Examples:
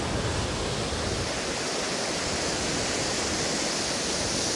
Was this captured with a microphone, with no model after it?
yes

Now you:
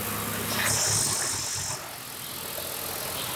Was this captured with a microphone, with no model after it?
yes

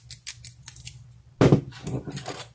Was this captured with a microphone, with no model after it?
yes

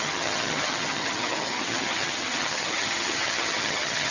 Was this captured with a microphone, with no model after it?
no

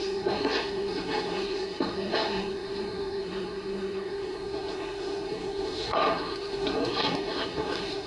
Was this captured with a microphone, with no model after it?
no